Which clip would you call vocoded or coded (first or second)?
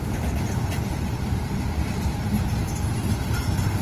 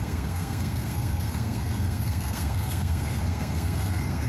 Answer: second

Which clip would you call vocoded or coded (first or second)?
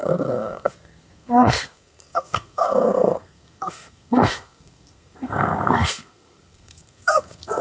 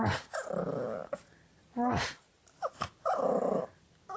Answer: first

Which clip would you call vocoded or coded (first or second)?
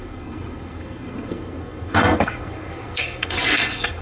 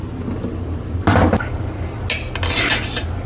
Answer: first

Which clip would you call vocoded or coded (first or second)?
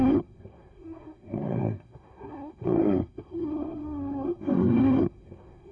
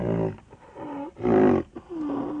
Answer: first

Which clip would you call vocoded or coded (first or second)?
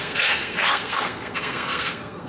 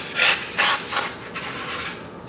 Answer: first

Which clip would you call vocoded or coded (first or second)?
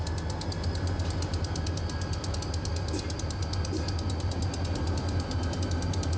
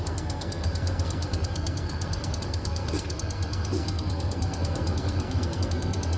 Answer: second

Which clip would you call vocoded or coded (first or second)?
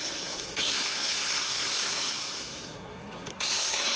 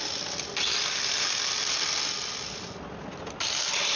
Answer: first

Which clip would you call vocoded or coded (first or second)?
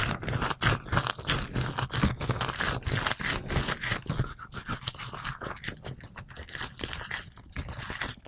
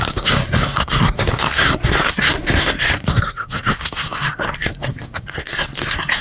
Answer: second